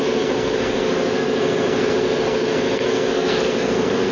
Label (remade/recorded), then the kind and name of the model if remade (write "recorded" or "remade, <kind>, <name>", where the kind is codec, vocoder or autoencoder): remade, codec, SNAC